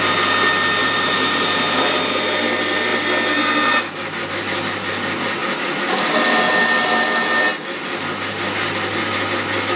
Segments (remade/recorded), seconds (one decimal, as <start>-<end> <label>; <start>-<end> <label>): 0.0-0.8 recorded; 0.8-1.6 remade; 1.6-9.8 recorded